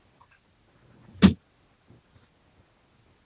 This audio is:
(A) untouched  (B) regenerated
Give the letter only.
A